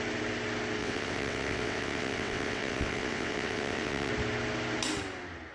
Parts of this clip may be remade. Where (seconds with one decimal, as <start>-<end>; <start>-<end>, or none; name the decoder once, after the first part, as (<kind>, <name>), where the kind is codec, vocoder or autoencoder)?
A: 0.8-4.1 (vocoder, WaveNeXt)